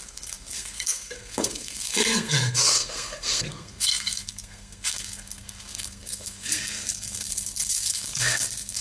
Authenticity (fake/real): fake